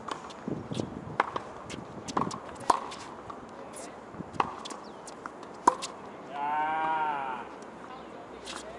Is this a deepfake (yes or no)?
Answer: no